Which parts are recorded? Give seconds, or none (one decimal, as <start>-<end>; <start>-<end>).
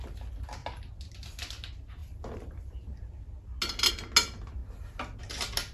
0.0-5.7